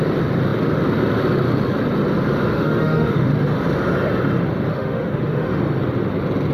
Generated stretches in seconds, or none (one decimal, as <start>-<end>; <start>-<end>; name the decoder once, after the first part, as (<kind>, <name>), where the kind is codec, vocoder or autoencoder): 2.5-3.3 (autoencoder, DAC-VAE); 4.7-5.6